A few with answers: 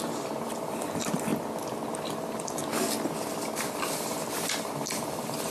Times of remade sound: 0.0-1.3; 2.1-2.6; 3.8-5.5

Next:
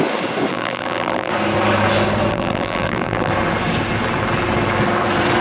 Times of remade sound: 0.5-1.3; 2.3-3.3

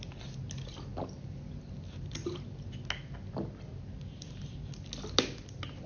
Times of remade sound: none

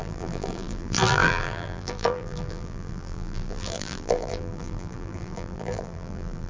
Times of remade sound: 0.0-6.5

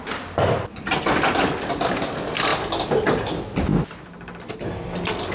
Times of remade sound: 3.7-4.5